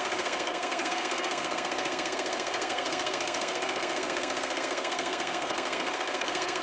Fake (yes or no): yes